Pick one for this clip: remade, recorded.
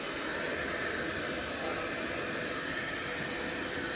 recorded